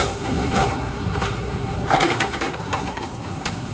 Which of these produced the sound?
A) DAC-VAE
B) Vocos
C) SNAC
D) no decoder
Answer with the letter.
C